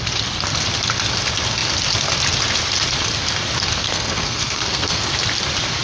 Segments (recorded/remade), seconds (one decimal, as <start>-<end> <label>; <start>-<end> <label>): 0.0-3.8 recorded; 3.8-5.1 remade; 5.1-5.8 recorded